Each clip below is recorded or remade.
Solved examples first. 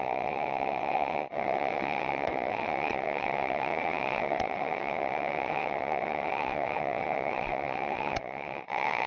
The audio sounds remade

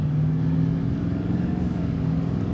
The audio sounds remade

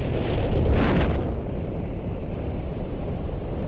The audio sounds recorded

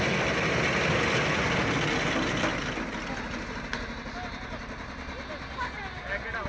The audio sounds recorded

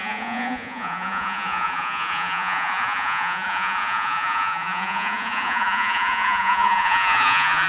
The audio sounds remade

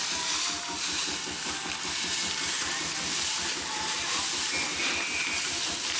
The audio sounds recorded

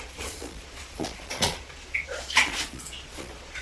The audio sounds remade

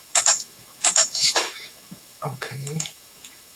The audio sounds remade